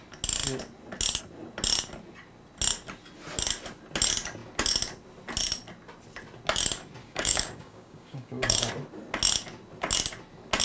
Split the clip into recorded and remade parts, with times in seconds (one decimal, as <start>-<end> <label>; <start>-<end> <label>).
0.0-7.0 recorded; 7.0-8.7 remade; 8.7-10.6 recorded